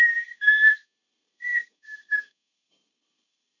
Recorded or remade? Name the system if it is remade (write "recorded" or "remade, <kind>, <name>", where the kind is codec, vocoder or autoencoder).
remade, codec, SNAC